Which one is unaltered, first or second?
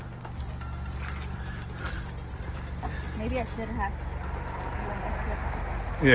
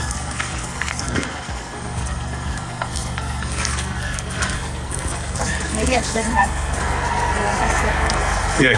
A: first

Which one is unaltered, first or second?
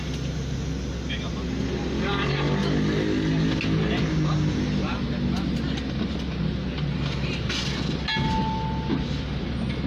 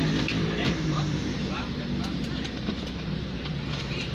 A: first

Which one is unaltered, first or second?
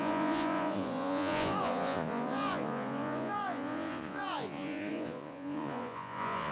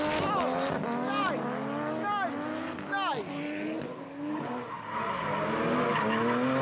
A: second